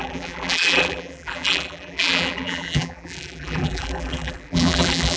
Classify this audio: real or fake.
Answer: fake